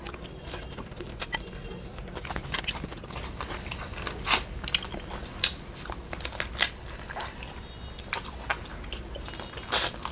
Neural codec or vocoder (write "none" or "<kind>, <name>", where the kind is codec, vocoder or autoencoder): none